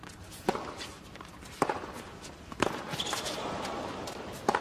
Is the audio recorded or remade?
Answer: recorded